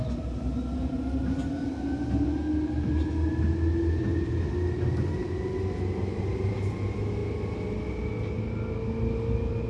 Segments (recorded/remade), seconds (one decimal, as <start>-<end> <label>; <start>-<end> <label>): 0.0-9.7 recorded